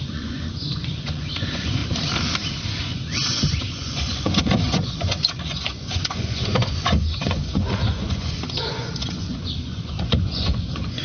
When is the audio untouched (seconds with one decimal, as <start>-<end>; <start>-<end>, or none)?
1.8-2.8